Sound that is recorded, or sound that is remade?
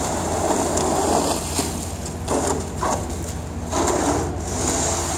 recorded